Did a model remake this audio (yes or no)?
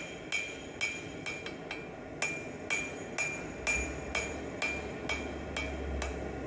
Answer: no